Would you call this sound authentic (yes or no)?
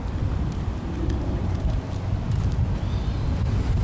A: yes